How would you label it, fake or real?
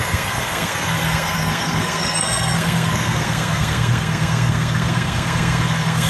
fake